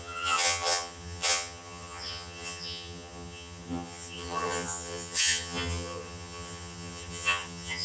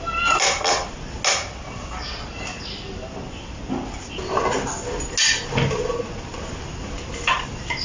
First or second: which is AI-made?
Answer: first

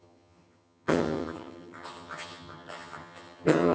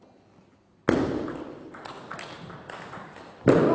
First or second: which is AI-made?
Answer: first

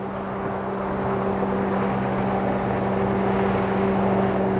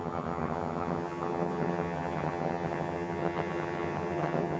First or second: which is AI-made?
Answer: second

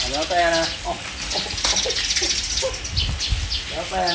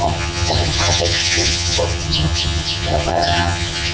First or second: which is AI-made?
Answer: second